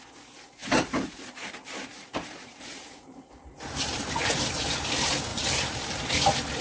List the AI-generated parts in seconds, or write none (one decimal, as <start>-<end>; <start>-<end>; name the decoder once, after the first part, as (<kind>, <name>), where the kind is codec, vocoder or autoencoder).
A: 0.6-4.5 (vocoder, BigVGAN v2); 5.3-6.0